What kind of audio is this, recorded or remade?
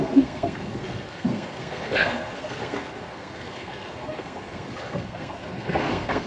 remade